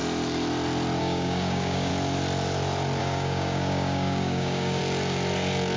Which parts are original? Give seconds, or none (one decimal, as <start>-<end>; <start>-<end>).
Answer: 0.0-1.0; 1.9-3.0; 4.8-5.8